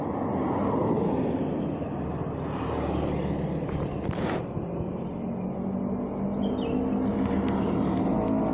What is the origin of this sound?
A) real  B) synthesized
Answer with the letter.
A